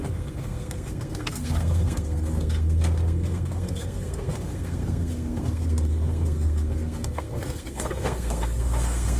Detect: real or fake fake